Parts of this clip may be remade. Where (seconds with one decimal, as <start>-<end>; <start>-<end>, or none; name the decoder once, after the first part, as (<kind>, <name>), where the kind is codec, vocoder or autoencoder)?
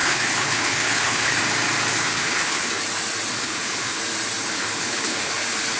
0.0-1.4 (codec, HILCodec); 1.9-2.8; 3.3-4.0; 4.4-5.3